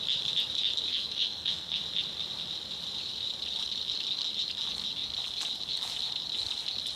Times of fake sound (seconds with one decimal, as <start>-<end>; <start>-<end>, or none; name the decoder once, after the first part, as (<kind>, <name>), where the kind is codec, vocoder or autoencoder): 0.9-1.8 (codec, SNAC)